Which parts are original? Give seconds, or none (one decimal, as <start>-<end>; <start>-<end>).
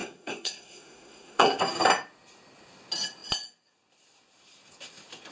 1.6-5.3